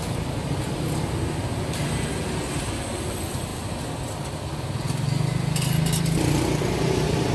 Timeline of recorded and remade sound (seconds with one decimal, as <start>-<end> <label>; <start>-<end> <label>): 0.0-7.3 recorded